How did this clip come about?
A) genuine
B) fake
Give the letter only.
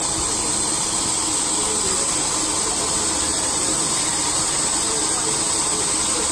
A